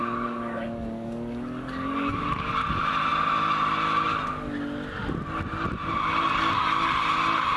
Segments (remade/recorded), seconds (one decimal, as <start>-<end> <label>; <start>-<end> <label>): 0.0-2.5 remade; 2.5-7.6 recorded